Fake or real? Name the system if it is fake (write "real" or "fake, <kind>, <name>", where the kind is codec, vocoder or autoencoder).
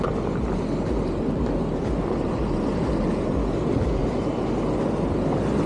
real